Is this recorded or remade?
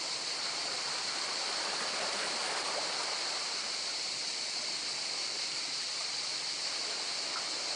recorded